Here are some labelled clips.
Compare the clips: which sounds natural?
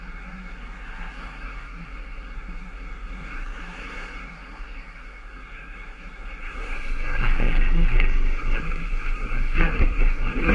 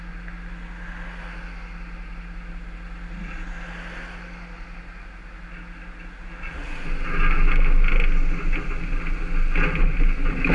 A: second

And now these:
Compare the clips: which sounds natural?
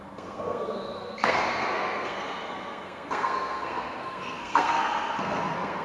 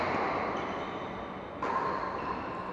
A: second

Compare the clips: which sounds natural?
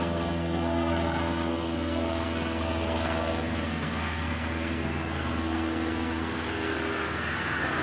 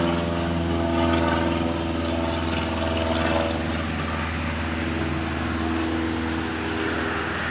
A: second